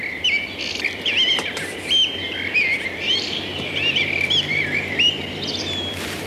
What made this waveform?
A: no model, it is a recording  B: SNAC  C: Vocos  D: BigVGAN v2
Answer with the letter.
D